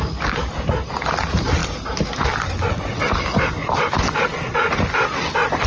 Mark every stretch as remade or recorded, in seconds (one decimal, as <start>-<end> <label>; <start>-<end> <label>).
0.0-5.7 recorded